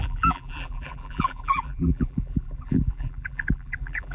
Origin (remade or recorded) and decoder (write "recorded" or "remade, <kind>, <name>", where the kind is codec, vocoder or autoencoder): remade, vocoder, BigVGAN v2